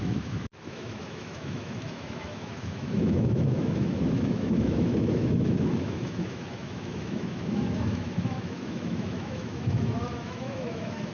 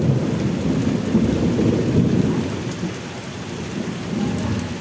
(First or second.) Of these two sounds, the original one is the second